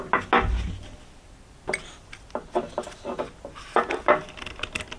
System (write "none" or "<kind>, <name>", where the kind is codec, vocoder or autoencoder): none